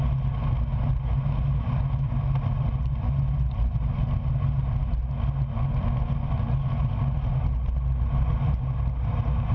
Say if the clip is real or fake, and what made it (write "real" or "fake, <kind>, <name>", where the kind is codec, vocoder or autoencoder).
real